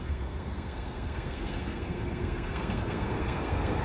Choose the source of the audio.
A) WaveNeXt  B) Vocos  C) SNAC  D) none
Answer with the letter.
C